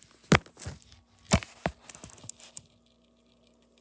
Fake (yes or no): no